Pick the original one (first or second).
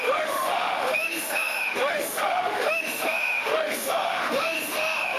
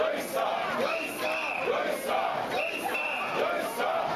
second